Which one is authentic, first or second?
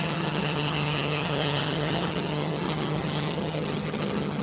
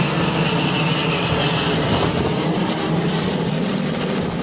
second